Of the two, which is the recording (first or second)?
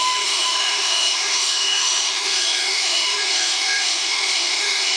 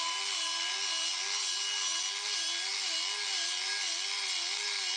second